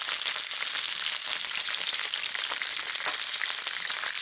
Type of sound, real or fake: real